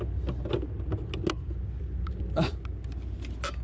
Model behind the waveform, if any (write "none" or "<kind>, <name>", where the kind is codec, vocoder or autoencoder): none